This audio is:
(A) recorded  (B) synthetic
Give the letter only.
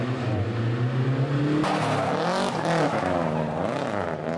A